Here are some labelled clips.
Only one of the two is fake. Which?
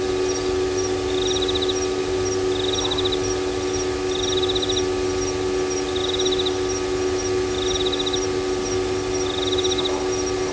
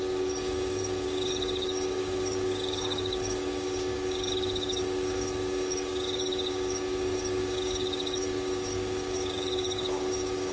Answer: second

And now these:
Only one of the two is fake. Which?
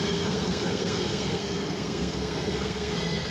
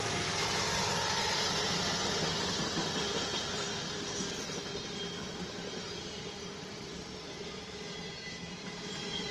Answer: first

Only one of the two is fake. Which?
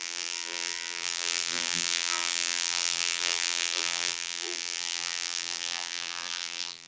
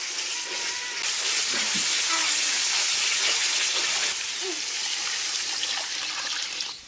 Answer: first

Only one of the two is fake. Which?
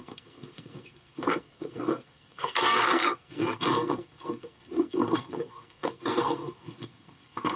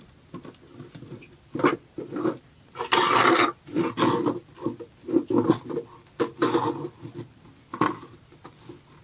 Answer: first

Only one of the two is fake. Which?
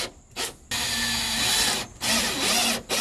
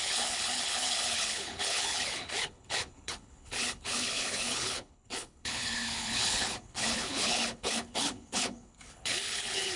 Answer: second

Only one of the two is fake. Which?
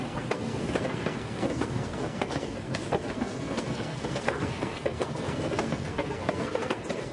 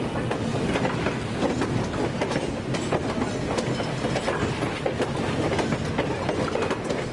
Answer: first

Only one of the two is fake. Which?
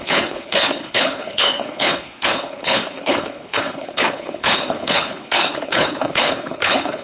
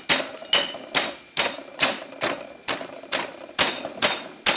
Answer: first